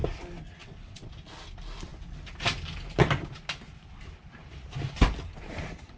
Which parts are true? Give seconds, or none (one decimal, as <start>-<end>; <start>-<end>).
0.0-0.6; 1.1-6.0